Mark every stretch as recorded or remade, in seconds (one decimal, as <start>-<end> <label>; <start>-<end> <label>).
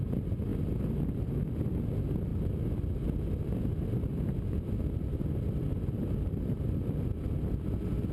0.0-8.1 recorded